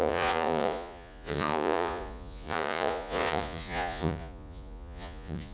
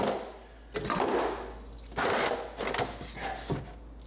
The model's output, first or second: first